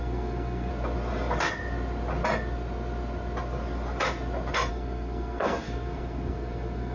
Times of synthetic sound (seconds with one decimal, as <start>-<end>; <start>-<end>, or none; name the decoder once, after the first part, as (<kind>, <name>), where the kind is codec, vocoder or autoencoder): 0.0-0.7 (codec, SNAC); 4.7-6.9